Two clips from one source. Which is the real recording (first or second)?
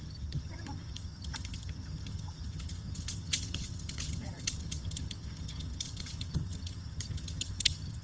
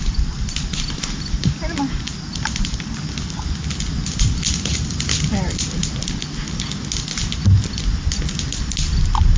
second